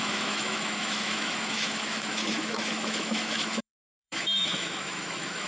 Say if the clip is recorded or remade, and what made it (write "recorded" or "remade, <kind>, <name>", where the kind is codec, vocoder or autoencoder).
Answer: remade, autoencoder, DAC-VAE